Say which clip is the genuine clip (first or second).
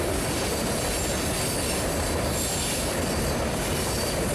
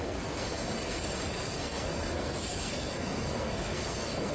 first